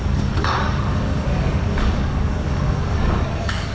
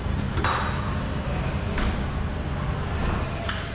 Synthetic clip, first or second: first